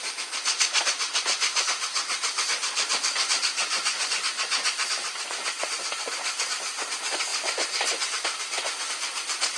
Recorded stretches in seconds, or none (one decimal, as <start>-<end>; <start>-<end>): 0.0-3.6; 4.2-9.6